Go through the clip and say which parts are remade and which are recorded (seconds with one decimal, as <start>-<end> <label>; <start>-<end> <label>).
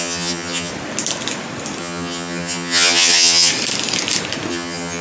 0.0-0.7 remade; 0.7-1.8 recorded; 1.8-3.5 remade; 3.5-4.5 recorded; 4.5-5.0 remade